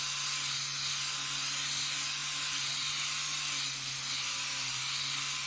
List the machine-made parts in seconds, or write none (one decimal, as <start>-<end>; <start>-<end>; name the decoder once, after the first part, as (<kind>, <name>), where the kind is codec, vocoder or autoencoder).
none